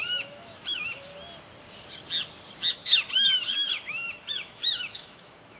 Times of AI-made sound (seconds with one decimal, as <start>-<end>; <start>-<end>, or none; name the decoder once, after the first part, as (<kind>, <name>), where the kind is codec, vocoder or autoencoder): 0.0-1.1 (autoencoder, DAC-VAE); 2.7-5.6